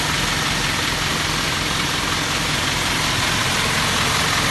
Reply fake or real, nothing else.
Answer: real